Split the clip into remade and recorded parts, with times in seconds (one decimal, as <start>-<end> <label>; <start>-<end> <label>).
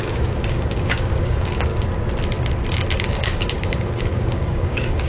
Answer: 0.0-1.7 remade; 1.7-3.0 recorded; 3.0-5.1 remade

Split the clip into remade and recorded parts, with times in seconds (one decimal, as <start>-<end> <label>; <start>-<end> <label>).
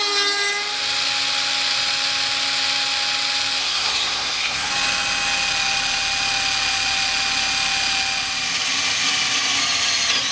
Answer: 0.0-3.6 recorded; 3.6-4.7 remade; 4.7-10.3 recorded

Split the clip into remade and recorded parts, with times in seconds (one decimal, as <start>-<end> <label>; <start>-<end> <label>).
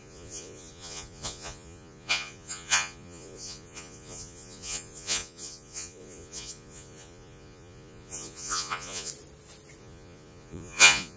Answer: 0.0-9.1 remade; 9.1-9.8 recorded; 9.8-11.2 remade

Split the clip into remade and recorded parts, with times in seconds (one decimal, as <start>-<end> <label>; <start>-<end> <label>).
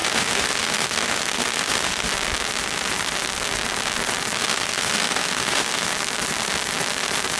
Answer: 0.0-2.1 remade; 2.1-4.4 recorded; 4.4-5.9 remade; 5.9-7.4 recorded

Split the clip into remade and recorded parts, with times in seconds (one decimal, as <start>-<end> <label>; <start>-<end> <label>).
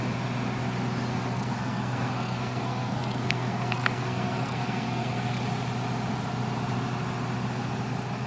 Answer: 0.0-1.1 recorded; 1.1-5.4 remade; 5.4-8.3 recorded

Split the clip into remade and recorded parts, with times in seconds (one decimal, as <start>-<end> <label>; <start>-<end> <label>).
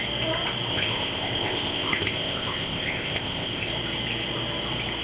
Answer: 0.0-0.7 recorded; 0.7-3.7 remade; 3.7-5.0 recorded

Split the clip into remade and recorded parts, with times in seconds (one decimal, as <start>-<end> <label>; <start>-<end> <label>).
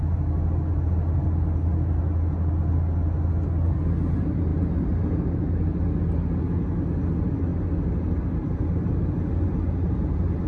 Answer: 0.0-10.5 recorded